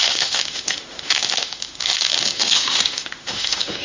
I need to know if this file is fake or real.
fake